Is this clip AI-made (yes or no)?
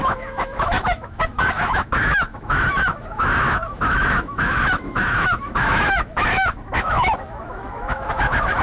yes